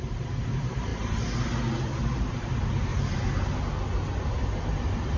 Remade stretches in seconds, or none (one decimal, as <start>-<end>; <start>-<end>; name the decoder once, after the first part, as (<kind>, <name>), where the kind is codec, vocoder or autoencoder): 0.0-0.9 (vocoder, BigVGAN v2); 1.8-2.9; 4.3-5.2